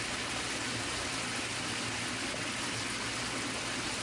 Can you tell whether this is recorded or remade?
recorded